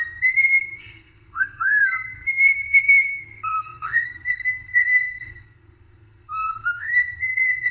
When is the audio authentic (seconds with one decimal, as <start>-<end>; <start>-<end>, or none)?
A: none